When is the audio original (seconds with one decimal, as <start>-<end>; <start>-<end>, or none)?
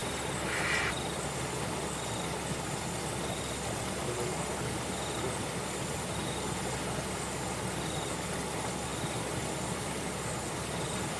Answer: 0.0-11.2